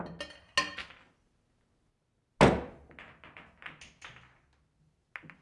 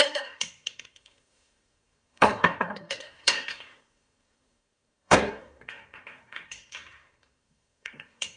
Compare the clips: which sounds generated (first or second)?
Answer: second